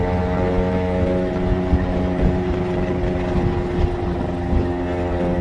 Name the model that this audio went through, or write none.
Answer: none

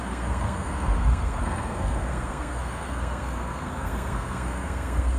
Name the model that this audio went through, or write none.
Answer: codec, SNAC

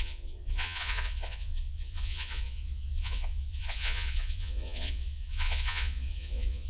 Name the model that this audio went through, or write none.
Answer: vocoder, Vocos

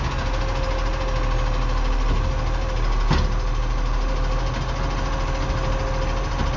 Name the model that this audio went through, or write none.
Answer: none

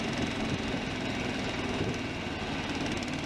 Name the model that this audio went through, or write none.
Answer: none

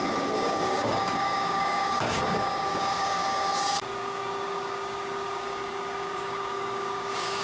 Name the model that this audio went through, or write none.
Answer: codec, DAC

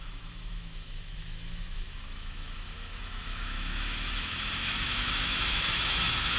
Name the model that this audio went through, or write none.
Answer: autoencoder, DAC-VAE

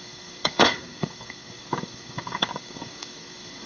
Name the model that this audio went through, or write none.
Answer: codec, DAC